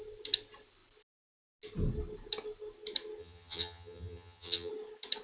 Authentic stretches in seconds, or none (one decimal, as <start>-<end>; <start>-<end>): 0.0-3.2; 4.7-5.2